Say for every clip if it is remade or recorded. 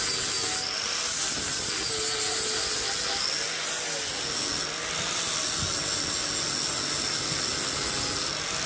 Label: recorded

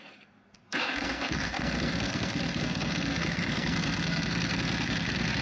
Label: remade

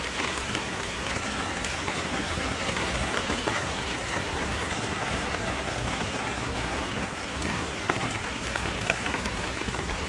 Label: remade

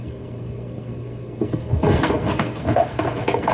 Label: remade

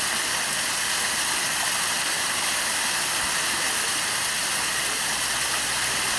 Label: recorded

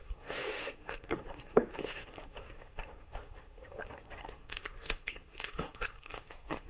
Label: remade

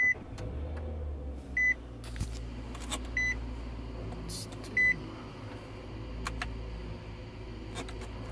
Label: recorded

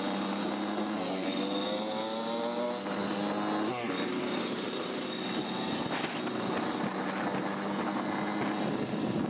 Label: recorded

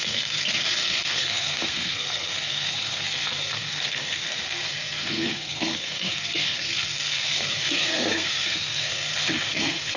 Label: remade